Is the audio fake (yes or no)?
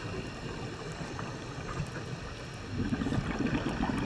no